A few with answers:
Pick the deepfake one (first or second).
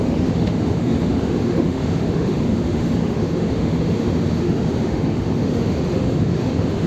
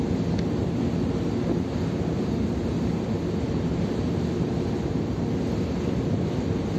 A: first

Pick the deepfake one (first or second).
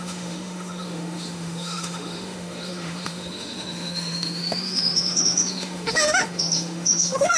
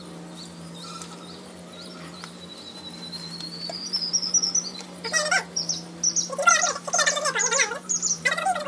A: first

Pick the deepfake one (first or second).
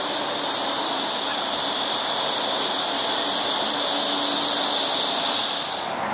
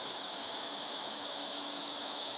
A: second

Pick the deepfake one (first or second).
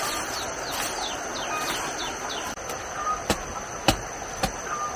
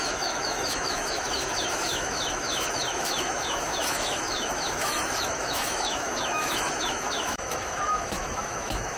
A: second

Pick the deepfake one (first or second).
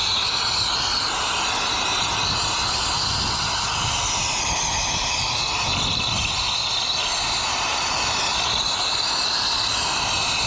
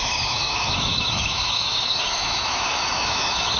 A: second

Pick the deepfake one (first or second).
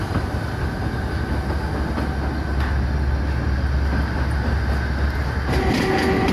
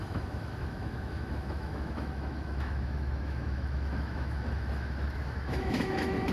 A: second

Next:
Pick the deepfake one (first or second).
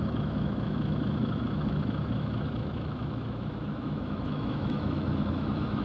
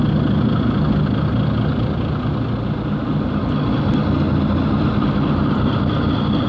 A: first